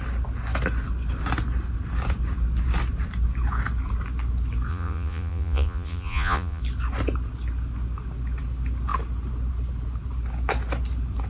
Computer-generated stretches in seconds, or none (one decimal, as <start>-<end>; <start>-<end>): 4.7-6.6